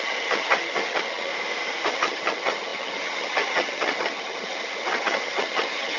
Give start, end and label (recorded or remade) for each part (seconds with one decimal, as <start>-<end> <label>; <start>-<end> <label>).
0.0-1.3 remade; 1.3-1.9 recorded; 1.9-6.0 remade